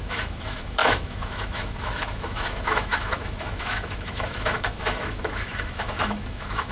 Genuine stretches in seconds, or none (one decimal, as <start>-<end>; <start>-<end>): none